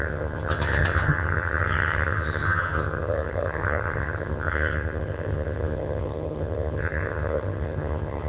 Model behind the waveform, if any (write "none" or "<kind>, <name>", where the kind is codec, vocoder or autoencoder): vocoder, HiFi-GAN